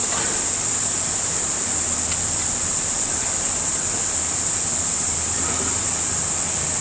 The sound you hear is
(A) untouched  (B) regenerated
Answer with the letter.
A